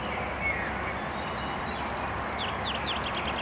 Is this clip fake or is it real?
real